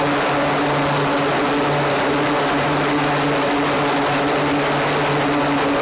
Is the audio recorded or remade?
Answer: recorded